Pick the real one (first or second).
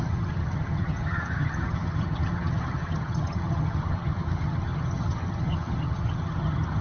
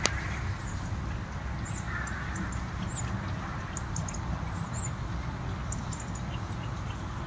second